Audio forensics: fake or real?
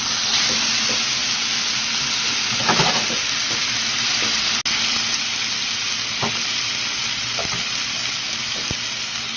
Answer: real